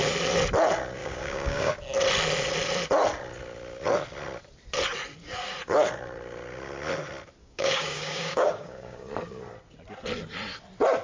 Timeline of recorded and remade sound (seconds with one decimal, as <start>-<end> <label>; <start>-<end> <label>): 0.0-1.0 recorded; 1.0-1.7 remade; 1.7-7.4 recorded; 7.4-9.0 remade; 9.0-11.0 recorded